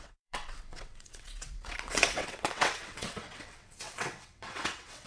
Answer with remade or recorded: remade